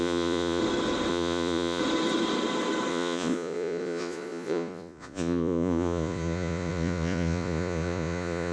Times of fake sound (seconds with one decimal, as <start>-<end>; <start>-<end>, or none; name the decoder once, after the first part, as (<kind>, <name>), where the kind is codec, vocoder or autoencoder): 0.0-0.6 (vocoder, Vocos); 1.1-1.8; 2.9-8.5